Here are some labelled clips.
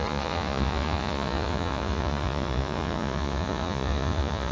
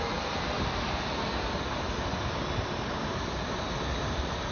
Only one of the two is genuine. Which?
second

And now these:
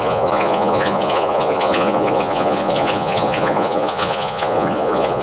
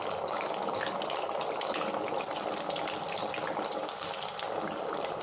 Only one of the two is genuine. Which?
second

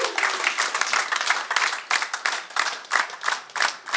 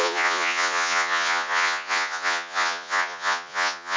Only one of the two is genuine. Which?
first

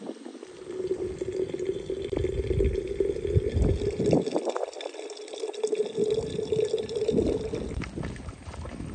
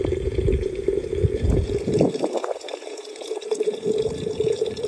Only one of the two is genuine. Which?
first